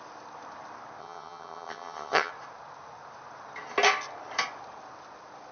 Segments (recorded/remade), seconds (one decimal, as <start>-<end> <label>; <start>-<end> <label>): 0.0-1.0 recorded; 1.0-2.3 remade; 2.3-5.5 recorded